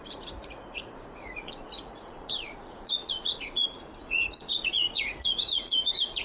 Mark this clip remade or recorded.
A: remade